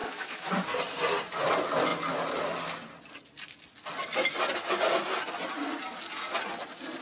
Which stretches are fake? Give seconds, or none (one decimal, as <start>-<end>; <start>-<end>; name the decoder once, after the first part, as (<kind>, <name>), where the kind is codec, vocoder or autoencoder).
0.0-0.5 (autoencoder, DAC-VAE)